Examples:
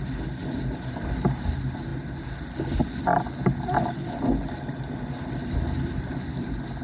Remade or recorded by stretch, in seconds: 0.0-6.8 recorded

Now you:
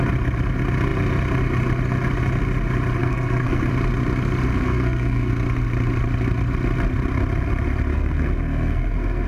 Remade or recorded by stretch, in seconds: 0.0-3.0 recorded; 3.0-3.7 remade; 3.7-4.5 recorded; 4.5-5.3 remade; 5.3-7.9 recorded; 7.9-9.3 remade

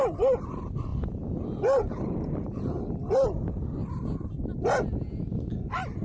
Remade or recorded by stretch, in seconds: 0.0-6.0 recorded

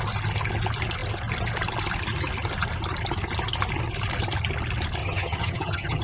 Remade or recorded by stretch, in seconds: 0.0-5.0 recorded; 5.0-6.0 remade

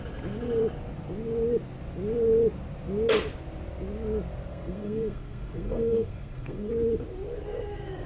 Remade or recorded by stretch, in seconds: 0.0-4.5 recorded; 4.5-6.7 remade; 6.7-8.1 recorded

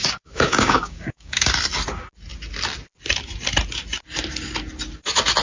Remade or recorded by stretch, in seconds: 0.0-1.5 remade; 1.5-5.4 recorded